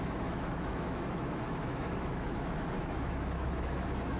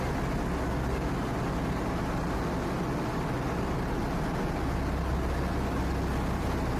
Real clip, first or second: second